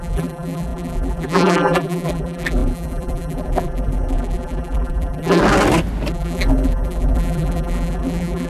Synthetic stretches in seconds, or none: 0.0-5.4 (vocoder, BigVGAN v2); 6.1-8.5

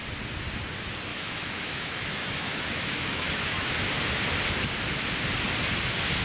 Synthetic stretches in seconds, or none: 1.1-3.7 (autoencoder, DAC-VAE)

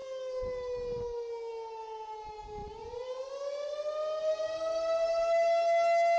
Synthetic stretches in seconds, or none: 2.6-3.3 (vocoder, BigVGAN v2)

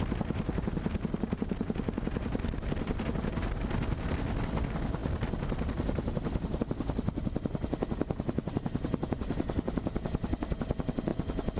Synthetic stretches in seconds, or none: none

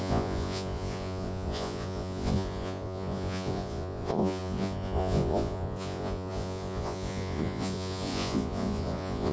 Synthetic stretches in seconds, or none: 0.0-9.3 (vocoder, Vocos)

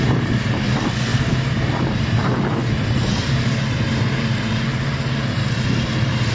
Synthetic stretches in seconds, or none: 0.0-6.3 (vocoder, BigVGAN v2)

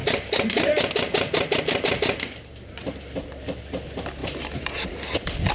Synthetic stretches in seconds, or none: none